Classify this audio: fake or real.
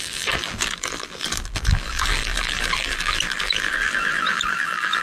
fake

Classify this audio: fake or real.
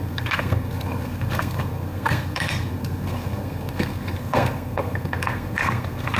fake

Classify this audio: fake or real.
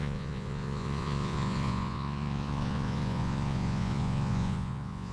fake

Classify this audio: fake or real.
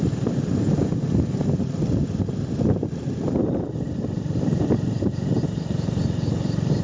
fake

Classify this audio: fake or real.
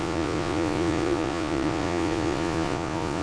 fake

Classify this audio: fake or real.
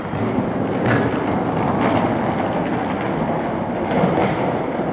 real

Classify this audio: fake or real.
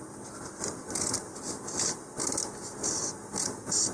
real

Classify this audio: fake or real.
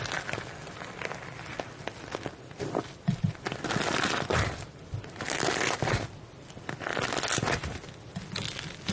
real